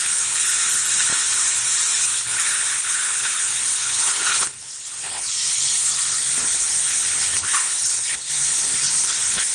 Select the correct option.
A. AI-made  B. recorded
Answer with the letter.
A